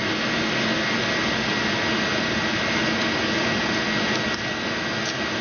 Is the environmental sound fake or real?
real